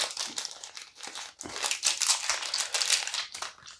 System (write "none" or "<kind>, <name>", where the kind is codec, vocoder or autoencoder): none